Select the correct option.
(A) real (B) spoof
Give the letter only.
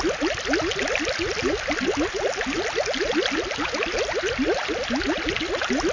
A